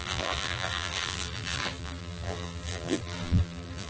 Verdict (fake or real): fake